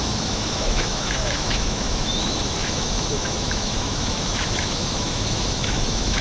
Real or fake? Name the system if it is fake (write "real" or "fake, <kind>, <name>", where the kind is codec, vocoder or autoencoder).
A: fake, autoencoder, DAC-VAE